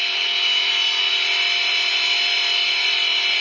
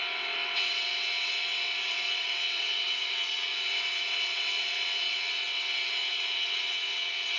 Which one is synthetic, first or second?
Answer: second